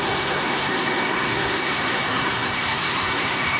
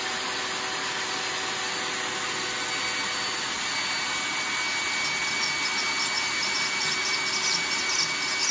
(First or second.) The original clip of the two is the second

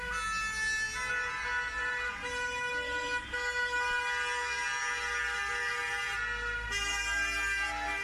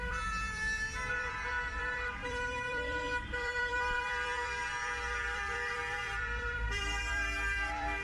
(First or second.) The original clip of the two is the first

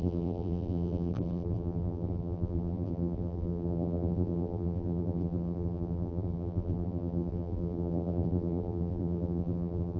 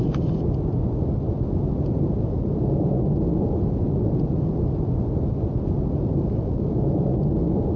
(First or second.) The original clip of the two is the second